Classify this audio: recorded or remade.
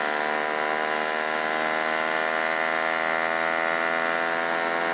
recorded